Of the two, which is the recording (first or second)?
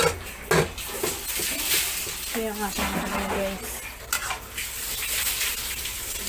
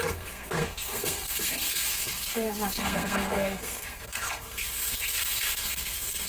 first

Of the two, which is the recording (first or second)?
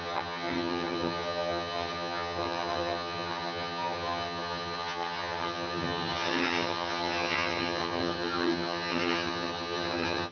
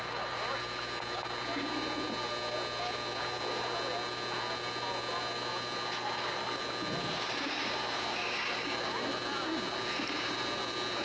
second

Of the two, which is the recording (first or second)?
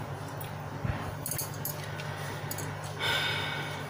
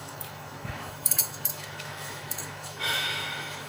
first